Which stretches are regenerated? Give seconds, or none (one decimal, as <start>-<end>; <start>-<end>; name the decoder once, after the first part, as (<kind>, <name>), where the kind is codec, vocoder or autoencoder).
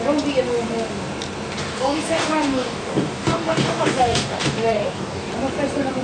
1.7-5.3 (codec, DAC)